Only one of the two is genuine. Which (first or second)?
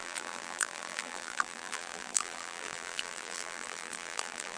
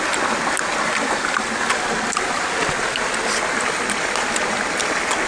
second